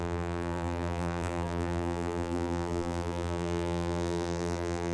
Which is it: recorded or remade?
remade